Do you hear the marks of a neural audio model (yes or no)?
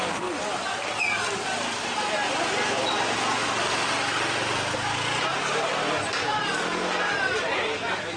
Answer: no